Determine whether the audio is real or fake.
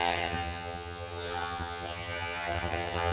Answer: fake